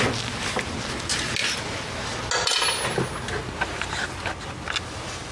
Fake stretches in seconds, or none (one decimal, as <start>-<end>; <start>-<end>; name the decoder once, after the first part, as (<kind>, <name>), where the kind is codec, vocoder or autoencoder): none

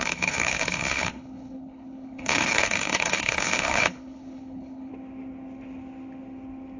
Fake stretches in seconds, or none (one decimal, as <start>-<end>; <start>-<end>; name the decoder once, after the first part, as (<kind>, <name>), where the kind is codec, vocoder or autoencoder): 0.0-4.9 (codec, HILCodec)

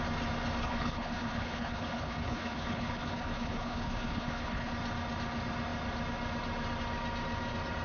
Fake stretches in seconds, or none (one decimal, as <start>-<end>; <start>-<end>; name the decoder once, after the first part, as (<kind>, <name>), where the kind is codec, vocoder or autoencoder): 0.6-4.7 (codec, HILCodec)